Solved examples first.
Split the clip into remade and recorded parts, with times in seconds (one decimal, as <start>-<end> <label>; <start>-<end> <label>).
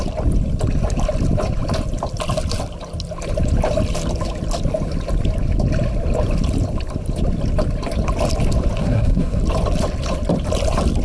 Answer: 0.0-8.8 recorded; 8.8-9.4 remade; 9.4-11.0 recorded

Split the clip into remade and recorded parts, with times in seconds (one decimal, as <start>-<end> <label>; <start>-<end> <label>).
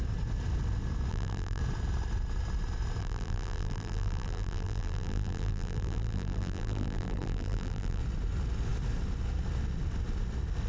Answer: 0.0-1.1 recorded; 1.1-1.6 remade; 1.6-3.0 recorded; 3.0-8.0 remade; 8.0-10.7 recorded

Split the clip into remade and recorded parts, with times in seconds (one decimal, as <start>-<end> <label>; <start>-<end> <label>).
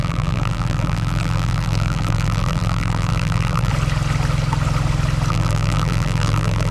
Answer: 0.0-3.7 remade; 3.7-5.3 recorded; 5.3-6.7 remade